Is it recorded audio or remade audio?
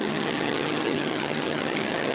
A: remade